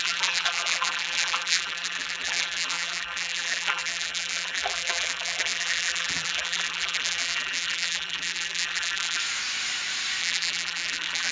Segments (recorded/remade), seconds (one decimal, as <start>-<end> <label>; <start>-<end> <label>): 0.0-9.2 remade; 9.2-10.2 recorded; 10.2-11.3 remade